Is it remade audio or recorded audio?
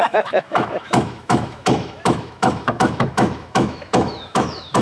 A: remade